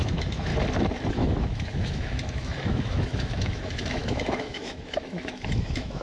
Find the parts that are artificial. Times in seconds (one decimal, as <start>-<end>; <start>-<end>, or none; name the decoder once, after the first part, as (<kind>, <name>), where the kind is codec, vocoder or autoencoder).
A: 0.0-0.5 (autoencoder, DAC-VAE); 1.1-6.0